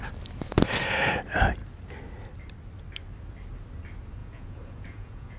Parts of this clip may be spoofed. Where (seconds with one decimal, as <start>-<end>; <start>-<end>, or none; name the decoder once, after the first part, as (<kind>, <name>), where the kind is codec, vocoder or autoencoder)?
4.2-5.4 (vocoder, Vocos)